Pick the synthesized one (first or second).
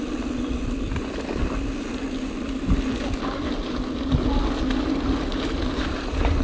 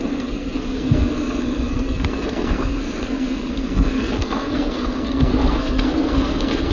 second